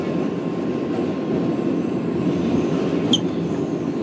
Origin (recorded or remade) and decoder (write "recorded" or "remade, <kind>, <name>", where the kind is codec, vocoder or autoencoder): recorded